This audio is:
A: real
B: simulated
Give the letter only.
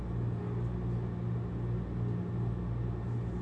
A